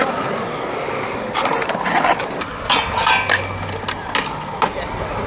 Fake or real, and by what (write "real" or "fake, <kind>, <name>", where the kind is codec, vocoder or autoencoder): real